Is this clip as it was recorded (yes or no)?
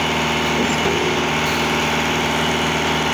yes